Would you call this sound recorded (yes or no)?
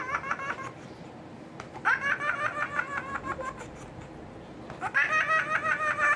yes